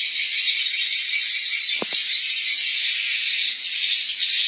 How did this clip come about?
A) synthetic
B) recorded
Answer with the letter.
B